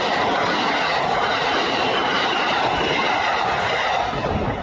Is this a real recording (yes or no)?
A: yes